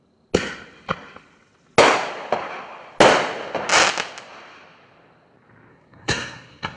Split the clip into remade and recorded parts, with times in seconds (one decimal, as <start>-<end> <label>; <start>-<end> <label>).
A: 0.0-5.7 recorded; 5.7-6.8 remade